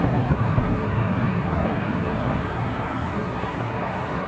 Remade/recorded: remade